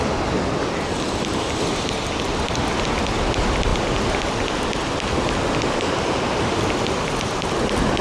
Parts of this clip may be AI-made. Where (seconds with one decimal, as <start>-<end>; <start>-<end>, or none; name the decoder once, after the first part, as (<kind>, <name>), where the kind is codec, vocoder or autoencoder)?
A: none